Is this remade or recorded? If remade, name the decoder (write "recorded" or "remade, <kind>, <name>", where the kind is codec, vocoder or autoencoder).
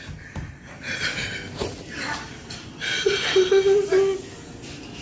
recorded